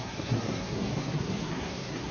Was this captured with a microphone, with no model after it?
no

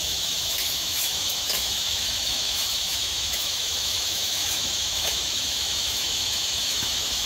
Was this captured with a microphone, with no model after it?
no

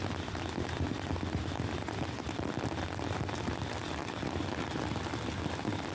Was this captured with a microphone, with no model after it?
yes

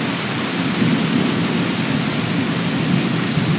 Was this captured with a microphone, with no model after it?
yes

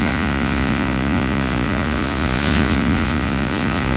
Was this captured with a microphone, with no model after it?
no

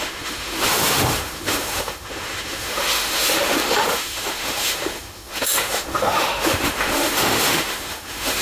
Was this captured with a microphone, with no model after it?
no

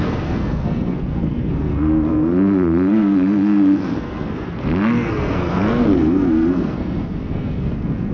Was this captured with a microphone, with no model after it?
no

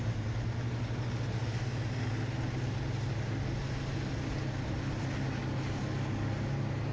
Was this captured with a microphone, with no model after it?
yes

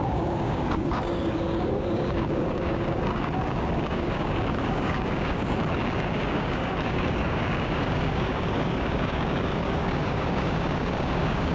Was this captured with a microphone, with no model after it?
no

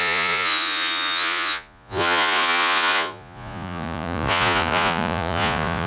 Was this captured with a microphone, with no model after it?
no